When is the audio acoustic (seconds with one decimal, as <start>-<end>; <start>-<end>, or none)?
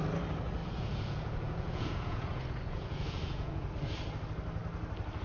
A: 0.0-0.6; 3.7-5.2